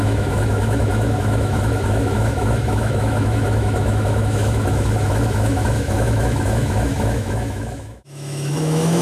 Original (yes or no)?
no